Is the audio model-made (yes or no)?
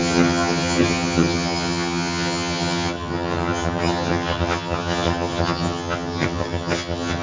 yes